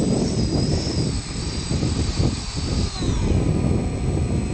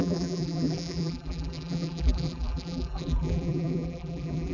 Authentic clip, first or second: first